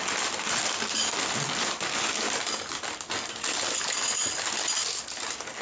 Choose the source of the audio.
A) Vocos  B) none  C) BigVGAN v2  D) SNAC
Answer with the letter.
B